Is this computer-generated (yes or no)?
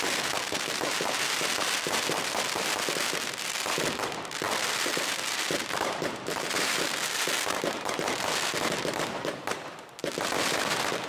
yes